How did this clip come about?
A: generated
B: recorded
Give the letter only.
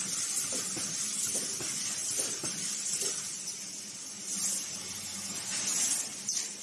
B